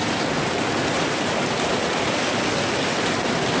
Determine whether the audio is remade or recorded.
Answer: recorded